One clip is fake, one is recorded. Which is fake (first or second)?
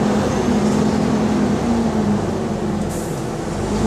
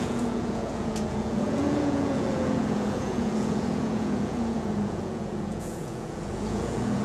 second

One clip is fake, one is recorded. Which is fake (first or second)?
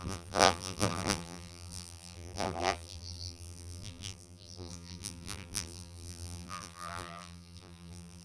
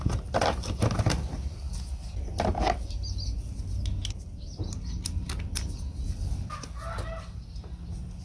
first